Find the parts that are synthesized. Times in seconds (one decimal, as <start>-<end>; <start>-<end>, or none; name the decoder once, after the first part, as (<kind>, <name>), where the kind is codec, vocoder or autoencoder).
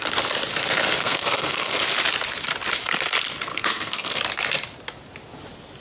1.0-1.8 (codec, SNAC); 3.5-4.2